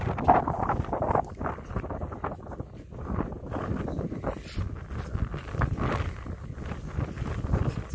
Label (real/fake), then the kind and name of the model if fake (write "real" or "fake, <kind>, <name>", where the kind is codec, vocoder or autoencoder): real